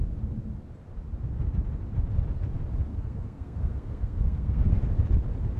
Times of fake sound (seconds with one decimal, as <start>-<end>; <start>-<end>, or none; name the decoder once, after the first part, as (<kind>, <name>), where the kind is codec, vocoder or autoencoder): 2.9-4.8 (codec, SNAC)